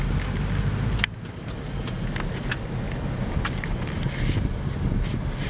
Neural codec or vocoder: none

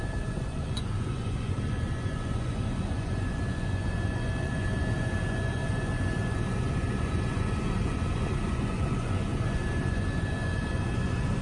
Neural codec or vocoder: vocoder, Vocos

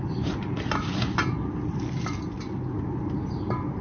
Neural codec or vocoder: none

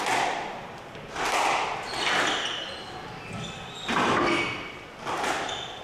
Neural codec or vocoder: none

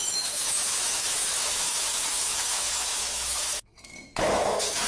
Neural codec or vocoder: autoencoder, DAC-VAE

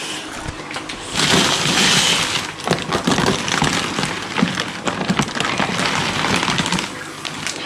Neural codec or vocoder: none